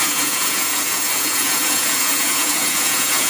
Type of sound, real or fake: fake